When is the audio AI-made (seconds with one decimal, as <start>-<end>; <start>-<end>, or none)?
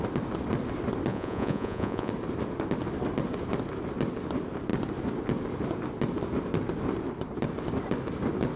1.1-2.1